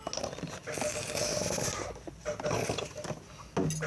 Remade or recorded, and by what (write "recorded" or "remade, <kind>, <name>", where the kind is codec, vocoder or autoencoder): recorded